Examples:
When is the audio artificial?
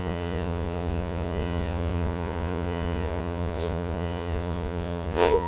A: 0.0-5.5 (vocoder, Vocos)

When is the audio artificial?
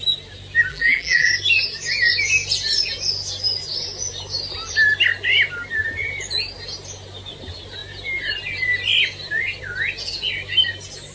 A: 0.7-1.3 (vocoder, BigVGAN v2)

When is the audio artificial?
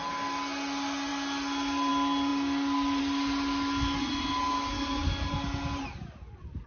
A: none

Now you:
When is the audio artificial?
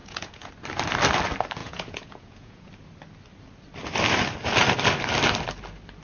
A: 0.0-0.5 (vocoder, Vocos); 1.6-2.7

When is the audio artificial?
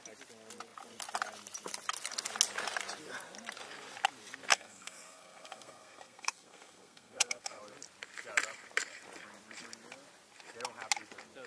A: 4.5-7.6 (codec, SNAC)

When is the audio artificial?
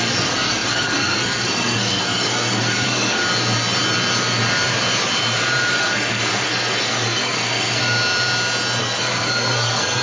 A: 0.0-3.2 (codec, SNAC); 5.8-7.8; 8.8-10.0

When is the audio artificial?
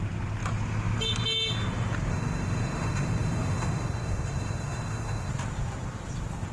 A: 2.1-5.3 (autoencoder, DAC-VAE)